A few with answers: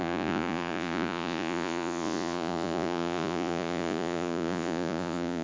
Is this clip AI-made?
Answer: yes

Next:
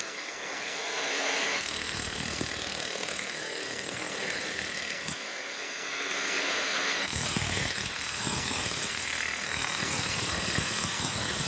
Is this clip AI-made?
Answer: yes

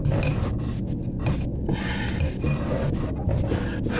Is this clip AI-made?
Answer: no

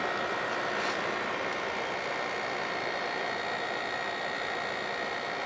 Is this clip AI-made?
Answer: no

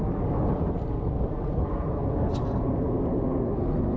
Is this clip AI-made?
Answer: no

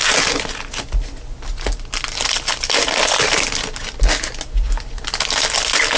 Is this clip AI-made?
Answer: no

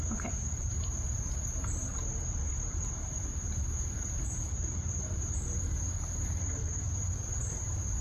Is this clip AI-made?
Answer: yes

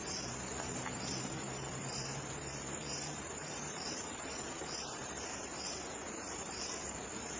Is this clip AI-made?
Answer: yes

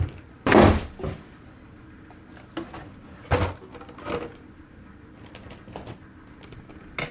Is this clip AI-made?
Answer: no